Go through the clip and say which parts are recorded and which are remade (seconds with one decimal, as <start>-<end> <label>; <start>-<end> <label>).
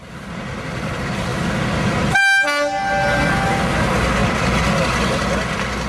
0.0-5.9 recorded